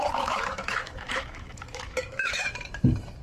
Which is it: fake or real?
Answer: fake